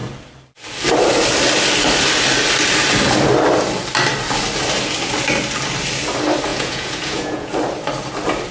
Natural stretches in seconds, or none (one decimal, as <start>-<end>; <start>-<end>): 0.0-6.5; 7.5-8.5